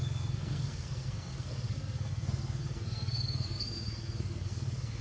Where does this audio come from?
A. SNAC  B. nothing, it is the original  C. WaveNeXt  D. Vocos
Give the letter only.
A